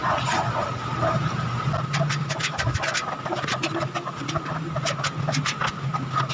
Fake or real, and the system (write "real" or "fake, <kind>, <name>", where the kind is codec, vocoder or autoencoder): real